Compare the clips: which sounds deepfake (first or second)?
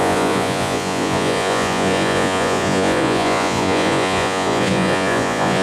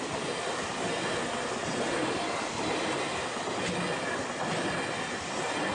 first